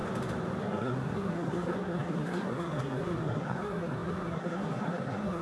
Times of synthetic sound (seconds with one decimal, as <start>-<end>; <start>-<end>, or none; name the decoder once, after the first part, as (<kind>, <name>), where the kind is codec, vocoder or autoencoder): 0.6-5.4 (codec, SNAC)